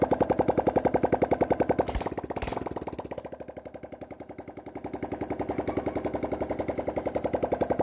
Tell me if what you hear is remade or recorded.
recorded